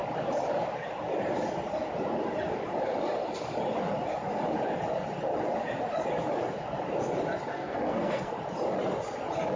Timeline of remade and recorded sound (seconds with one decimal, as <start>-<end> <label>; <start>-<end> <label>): 0.0-7.5 recorded; 7.5-8.3 remade; 8.3-9.6 recorded